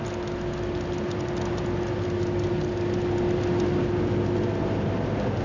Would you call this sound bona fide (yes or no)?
yes